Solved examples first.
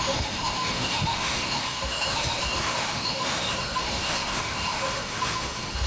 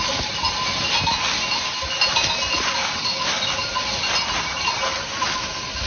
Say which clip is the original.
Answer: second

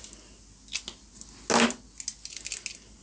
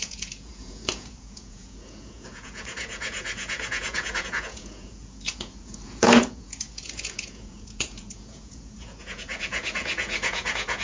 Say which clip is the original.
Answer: first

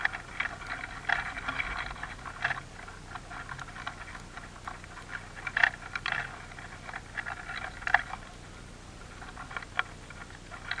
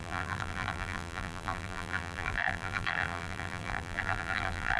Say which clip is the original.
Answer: first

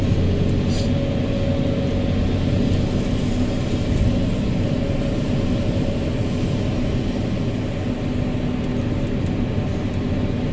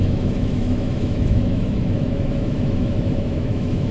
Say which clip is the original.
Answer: first